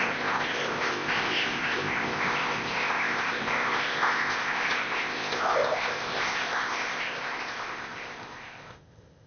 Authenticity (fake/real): fake